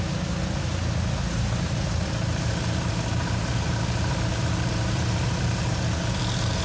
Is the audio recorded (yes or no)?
yes